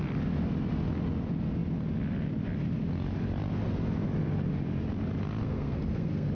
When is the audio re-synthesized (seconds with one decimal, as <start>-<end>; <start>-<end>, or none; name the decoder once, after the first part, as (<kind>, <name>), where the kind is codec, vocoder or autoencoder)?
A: 5.4-6.3 (codec, SNAC)